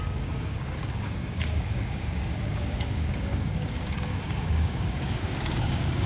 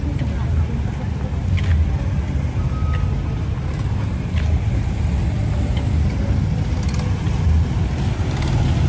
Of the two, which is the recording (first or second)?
second